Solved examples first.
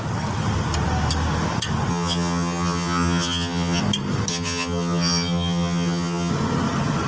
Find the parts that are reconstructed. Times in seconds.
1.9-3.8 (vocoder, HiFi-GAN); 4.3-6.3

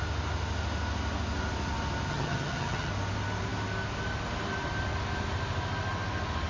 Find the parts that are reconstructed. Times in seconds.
2.1-2.9 (vocoder, HiFi-GAN)

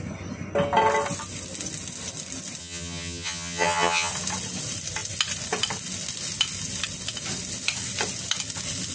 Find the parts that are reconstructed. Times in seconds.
2.6-4.1 (vocoder, HiFi-GAN)

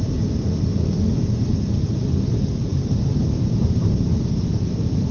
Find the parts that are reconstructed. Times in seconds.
none

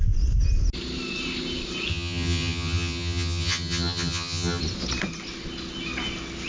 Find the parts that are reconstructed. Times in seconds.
1.9-4.6 (vocoder, HiFi-GAN)